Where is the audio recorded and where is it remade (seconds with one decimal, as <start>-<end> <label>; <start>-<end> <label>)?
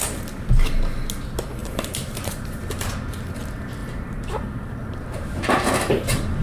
0.0-1.6 recorded; 1.6-2.9 remade; 2.9-3.8 recorded; 3.8-5.7 remade; 5.7-6.4 recorded